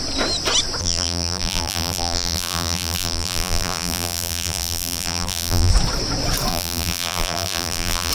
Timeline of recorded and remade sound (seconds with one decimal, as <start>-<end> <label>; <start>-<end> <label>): 0.0-0.8 recorded; 0.8-5.7 remade; 5.7-6.5 recorded; 6.5-8.1 remade